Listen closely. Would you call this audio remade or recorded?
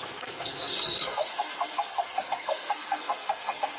remade